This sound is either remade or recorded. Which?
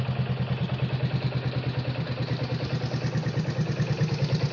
recorded